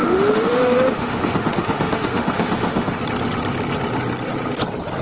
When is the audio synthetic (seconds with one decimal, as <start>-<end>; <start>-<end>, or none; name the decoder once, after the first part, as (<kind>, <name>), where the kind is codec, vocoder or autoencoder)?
0.0-3.0 (autoencoder, DAC-VAE)